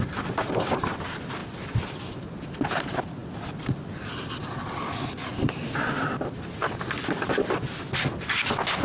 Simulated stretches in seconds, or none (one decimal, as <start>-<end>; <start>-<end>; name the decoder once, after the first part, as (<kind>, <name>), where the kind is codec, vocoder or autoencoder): none